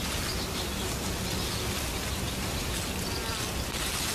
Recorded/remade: recorded